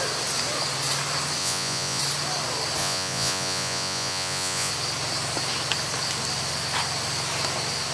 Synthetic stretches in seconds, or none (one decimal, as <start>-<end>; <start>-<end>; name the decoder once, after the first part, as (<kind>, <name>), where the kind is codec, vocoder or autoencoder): 1.4-2.0 (vocoder, Vocos); 2.8-4.7